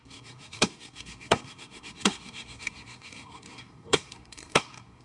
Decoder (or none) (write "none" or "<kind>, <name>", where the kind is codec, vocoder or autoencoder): codec, SNAC